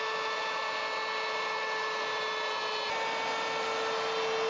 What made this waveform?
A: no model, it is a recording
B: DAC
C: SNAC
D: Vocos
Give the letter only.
A